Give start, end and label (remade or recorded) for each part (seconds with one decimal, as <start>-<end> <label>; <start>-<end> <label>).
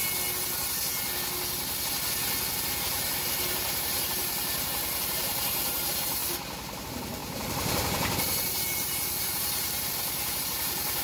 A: 0.0-2.6 recorded; 2.6-6.2 remade; 6.2-6.8 recorded; 6.8-11.0 remade